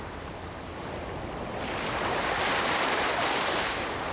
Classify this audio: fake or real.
real